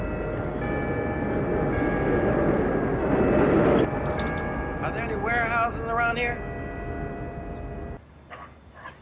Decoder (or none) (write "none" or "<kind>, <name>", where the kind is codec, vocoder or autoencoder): none